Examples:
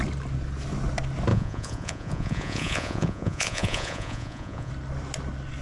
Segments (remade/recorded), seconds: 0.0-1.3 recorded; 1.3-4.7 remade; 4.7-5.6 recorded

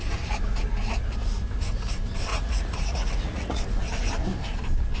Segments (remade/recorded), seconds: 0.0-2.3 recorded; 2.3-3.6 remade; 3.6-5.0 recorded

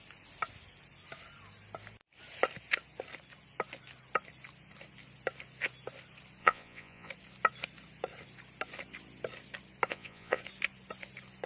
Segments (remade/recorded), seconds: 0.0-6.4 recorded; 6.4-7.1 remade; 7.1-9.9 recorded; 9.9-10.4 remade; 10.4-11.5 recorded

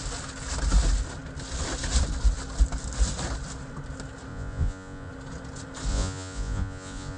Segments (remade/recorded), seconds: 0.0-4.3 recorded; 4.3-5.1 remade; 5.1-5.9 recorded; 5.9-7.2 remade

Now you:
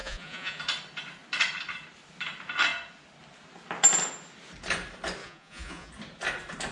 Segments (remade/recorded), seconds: 0.0-0.6 remade; 0.6-5.2 recorded; 5.2-5.9 remade; 5.9-6.7 recorded